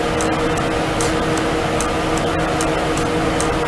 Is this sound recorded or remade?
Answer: recorded